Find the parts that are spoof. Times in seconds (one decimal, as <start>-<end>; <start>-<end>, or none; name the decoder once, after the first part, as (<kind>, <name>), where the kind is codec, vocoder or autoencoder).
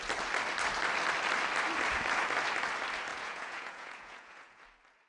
3.1-4.6 (vocoder, Vocos)